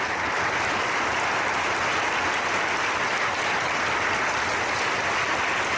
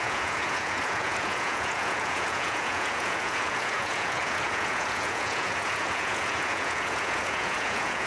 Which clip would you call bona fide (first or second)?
first